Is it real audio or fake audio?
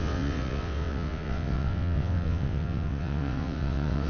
fake